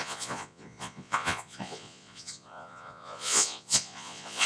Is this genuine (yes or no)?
no